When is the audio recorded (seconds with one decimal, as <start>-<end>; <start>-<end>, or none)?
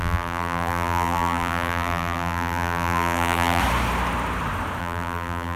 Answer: 3.6-4.8